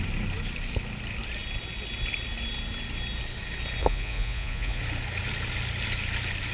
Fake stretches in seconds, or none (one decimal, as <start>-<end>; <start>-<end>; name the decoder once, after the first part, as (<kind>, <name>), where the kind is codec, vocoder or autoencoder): 3.8-4.8 (vocoder, Vocos)